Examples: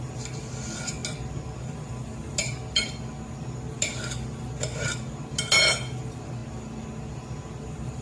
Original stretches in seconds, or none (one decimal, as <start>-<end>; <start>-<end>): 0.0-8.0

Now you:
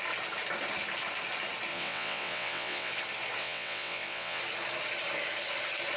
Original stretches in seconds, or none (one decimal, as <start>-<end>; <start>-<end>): 0.0-1.7; 2.9-3.4; 4.4-6.0

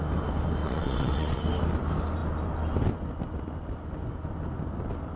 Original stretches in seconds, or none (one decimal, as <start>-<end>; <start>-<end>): 0.0-0.6; 1.4-5.2

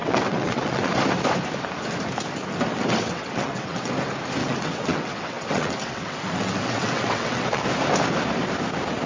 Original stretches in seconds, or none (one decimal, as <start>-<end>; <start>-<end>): 0.9-2.7; 3.9-4.4; 7.6-9.1

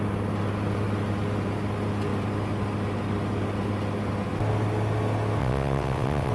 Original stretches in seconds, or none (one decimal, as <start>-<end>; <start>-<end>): 0.0-5.4

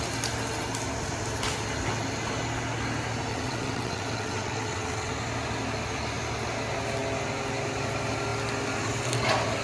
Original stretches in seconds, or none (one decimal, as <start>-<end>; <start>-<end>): 0.0-3.3; 5.1-9.6

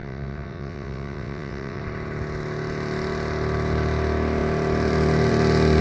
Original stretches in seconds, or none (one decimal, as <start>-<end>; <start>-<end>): 1.8-5.8